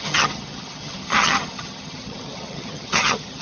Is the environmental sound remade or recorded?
remade